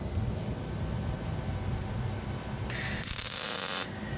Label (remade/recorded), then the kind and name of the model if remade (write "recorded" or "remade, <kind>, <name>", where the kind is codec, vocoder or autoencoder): recorded